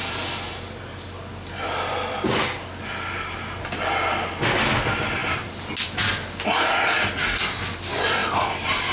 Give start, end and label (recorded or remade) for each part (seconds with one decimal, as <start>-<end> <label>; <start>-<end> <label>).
0.0-8.9 recorded

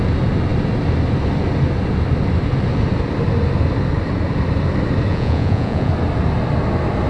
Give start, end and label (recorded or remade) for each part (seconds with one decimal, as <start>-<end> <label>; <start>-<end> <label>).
0.0-5.1 recorded; 5.1-5.9 remade; 5.9-7.1 recorded